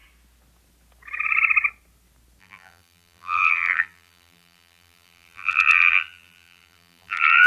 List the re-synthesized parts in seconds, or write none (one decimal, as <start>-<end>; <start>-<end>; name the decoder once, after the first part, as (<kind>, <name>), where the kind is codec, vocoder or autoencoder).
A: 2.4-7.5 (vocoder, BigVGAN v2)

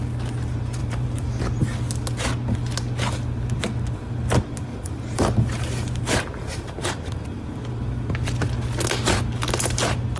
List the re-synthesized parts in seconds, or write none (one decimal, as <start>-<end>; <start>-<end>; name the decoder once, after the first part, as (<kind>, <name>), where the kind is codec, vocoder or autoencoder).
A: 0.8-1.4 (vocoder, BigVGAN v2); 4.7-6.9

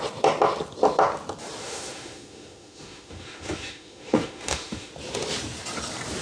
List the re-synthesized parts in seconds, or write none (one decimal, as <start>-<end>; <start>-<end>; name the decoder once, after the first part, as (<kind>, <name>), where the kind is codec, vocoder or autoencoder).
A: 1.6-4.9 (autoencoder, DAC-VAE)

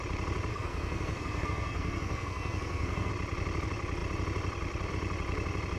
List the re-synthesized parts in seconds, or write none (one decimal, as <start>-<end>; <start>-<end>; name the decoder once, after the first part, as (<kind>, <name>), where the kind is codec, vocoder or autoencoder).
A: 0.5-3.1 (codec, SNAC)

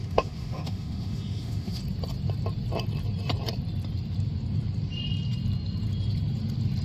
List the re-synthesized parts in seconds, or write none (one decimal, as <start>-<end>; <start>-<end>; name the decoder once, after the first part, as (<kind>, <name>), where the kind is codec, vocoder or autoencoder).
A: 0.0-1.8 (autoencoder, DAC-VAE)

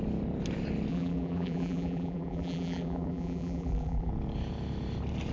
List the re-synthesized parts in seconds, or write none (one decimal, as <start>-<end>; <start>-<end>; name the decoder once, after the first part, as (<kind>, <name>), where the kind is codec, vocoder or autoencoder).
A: 0.9-4.1 (vocoder, BigVGAN v2)

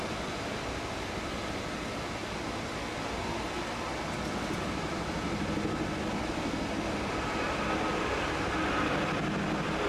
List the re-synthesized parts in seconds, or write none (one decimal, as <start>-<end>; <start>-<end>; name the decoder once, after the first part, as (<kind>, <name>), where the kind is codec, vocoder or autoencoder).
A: none